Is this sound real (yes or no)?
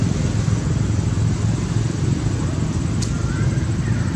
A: yes